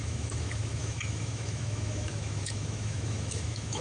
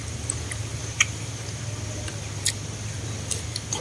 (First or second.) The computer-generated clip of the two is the first